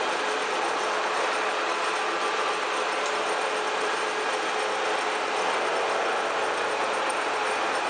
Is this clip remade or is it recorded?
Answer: recorded